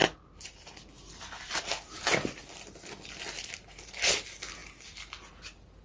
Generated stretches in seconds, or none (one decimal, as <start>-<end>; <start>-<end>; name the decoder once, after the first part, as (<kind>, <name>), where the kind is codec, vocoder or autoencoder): none

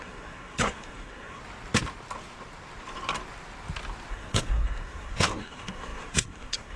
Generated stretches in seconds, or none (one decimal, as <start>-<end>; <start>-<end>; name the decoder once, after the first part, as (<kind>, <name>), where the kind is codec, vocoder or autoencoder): 0.0-1.4 (codec, SNAC); 4.1-6.8

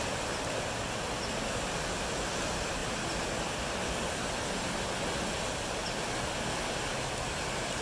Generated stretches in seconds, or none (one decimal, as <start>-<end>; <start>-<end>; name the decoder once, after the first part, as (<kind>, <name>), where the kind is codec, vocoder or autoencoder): none

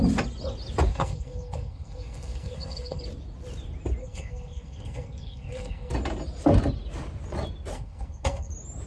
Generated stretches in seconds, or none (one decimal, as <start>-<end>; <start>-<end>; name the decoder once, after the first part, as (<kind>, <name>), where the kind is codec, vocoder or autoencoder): 0.9-3.0 (codec, SNAC); 4.0-5.9; 7.7-8.5

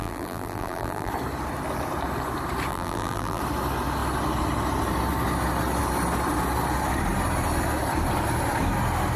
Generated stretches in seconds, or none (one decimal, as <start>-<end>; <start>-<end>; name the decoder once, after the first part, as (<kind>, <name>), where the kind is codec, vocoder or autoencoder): 0.0-1.1 (vocoder, BigVGAN v2); 2.7-3.4

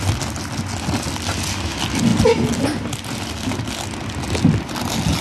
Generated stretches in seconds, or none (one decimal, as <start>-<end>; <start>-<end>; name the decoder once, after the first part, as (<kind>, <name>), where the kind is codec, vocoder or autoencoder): none